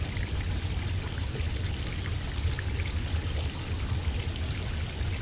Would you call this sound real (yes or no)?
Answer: yes